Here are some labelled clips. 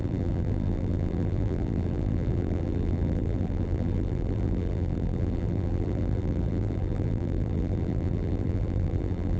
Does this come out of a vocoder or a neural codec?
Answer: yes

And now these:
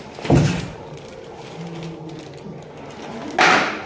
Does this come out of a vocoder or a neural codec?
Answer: no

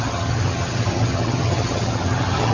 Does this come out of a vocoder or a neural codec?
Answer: yes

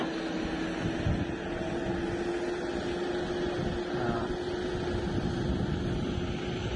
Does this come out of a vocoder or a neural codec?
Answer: no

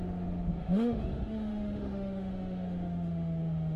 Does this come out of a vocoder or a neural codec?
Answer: yes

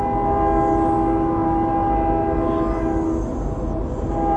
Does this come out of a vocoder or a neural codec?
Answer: no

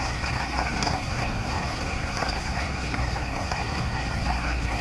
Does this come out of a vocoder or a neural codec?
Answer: yes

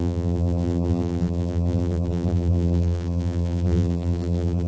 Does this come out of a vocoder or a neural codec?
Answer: yes